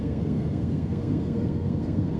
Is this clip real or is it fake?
fake